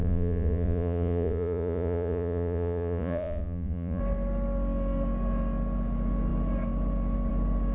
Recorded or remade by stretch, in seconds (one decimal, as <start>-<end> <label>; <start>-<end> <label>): 0.0-4.0 remade; 4.0-7.7 recorded